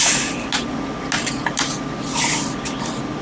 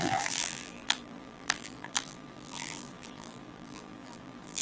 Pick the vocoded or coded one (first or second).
second